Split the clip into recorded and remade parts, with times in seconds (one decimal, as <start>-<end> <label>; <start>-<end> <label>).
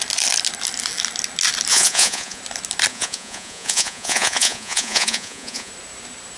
0.0-1.7 recorded; 1.7-2.4 remade; 2.4-2.9 recorded; 2.9-5.7 remade; 5.7-6.4 recorded